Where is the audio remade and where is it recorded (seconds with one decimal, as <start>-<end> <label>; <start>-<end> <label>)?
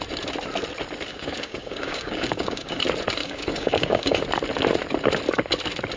0.0-1.1 recorded; 1.1-2.8 remade; 2.8-3.2 recorded; 3.2-4.2 remade; 4.2-6.0 recorded